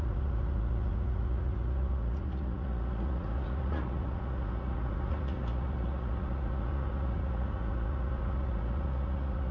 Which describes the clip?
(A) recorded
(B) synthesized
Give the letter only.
B